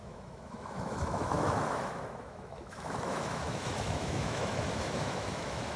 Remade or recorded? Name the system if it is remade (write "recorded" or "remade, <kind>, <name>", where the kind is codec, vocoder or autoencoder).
remade, autoencoder, DAC-VAE